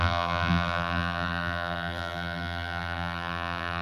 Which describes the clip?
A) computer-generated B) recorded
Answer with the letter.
A